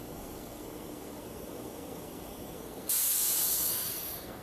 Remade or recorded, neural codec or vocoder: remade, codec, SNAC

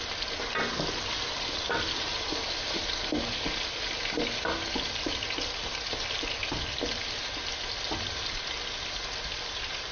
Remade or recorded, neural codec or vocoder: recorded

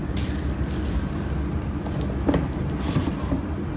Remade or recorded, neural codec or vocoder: recorded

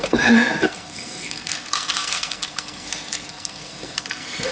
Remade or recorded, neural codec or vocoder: remade, codec, SNAC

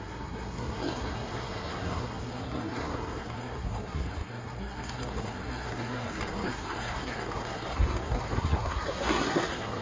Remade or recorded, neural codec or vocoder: remade, codec, SNAC